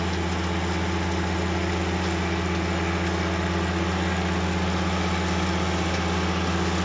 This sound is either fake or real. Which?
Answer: real